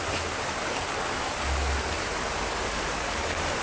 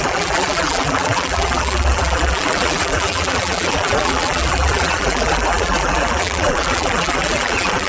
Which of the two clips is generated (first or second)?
second